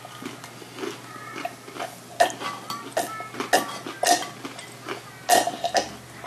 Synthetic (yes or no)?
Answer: no